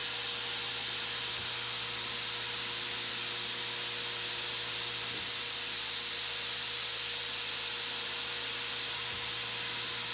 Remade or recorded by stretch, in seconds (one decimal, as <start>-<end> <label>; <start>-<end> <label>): 0.0-10.1 recorded